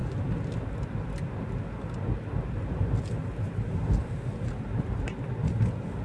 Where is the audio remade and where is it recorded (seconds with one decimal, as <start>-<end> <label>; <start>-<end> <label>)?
0.0-6.0 recorded